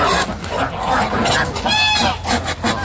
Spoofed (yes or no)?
no